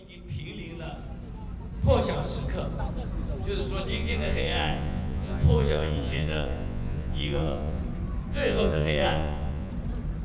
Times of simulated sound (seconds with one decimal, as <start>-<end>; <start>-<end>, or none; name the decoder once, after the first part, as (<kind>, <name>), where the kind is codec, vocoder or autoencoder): 3.9-7.8 (vocoder, Vocos); 8.3-9.7